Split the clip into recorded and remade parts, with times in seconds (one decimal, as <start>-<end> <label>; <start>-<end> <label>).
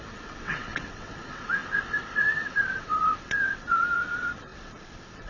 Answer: 0.0-5.3 remade